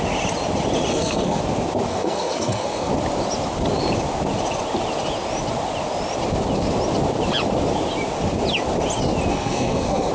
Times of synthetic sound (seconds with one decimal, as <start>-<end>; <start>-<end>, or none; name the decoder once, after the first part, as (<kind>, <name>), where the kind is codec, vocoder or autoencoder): 0.9-1.4 (codec, SNAC); 1.9-2.9; 9.3-10.1